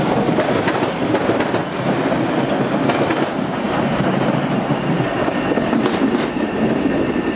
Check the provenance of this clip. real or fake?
real